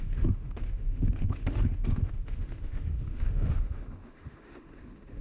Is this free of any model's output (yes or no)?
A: no